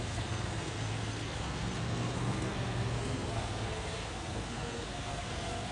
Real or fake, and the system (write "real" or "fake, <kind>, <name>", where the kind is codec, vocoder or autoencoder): fake, codec, SNAC